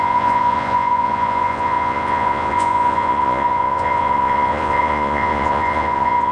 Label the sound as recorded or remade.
remade